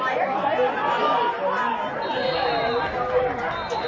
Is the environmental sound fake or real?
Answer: real